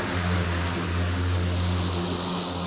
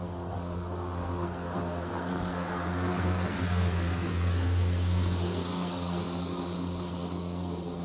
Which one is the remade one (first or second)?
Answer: second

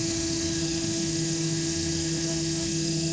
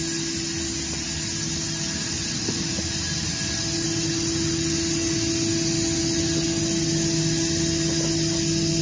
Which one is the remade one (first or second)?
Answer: first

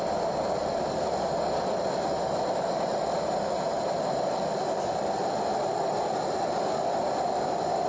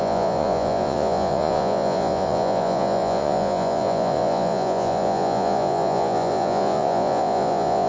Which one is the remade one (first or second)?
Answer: second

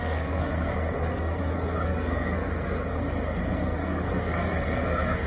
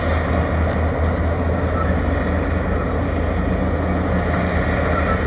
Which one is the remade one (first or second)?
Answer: first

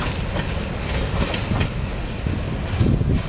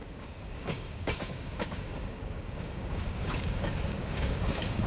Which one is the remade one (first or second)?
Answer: second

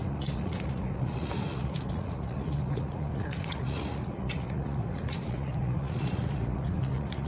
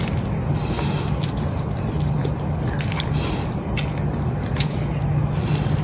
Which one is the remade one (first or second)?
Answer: first